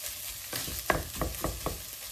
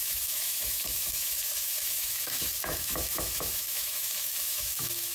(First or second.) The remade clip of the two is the second